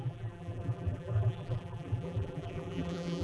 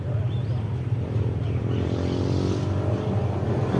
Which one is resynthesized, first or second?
first